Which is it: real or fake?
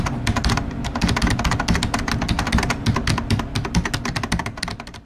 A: real